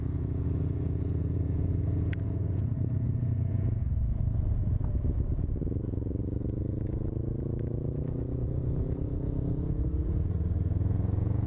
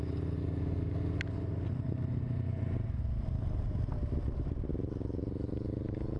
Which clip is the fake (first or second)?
first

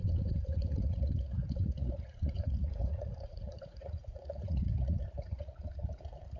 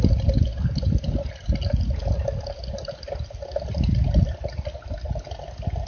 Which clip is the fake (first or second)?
first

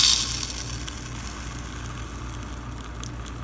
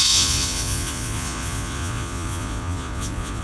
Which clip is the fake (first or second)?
second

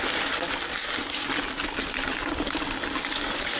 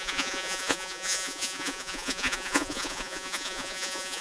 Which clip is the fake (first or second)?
second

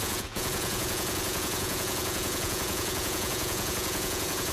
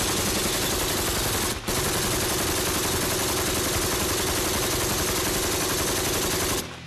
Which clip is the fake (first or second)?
first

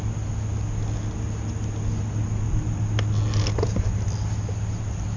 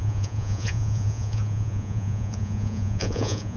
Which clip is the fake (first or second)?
second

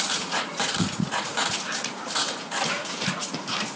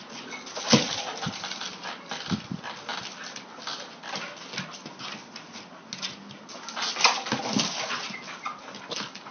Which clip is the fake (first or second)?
first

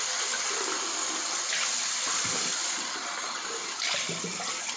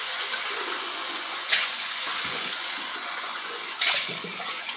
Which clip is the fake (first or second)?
second